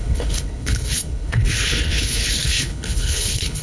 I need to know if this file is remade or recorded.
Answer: remade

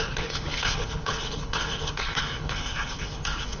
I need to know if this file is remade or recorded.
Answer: remade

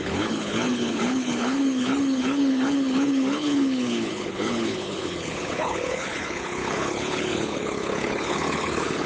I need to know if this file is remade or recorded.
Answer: remade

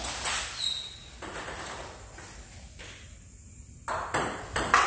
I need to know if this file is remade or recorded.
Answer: recorded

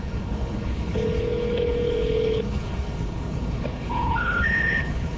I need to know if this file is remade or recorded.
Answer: remade